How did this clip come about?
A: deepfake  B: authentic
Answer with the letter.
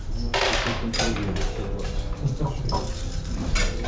A